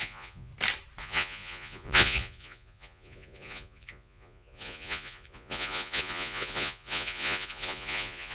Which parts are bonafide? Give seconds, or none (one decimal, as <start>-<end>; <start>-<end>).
0.5-1.0